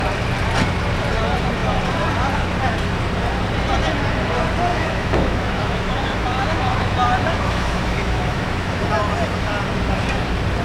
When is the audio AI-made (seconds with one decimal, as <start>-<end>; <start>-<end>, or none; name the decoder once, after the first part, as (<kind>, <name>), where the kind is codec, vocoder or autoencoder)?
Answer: 4.7-8.8 (autoencoder, DAC-VAE)